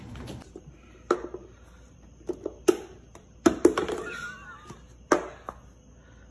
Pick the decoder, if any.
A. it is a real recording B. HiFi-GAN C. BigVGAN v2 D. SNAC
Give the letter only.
A